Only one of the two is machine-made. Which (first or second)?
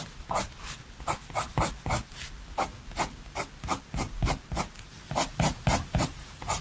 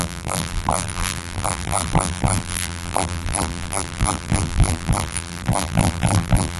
second